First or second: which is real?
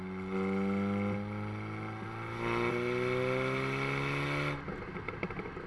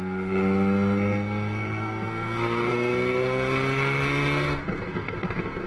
first